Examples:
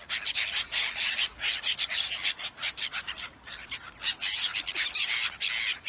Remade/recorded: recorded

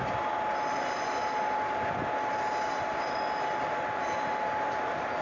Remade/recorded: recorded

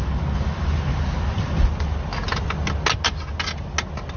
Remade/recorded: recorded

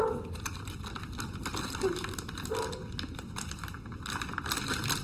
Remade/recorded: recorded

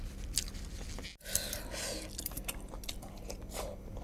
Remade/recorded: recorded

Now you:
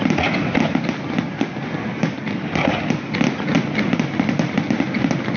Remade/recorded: recorded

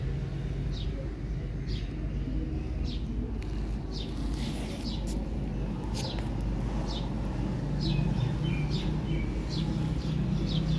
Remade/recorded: recorded